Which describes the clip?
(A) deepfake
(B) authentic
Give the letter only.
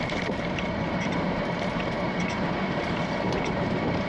A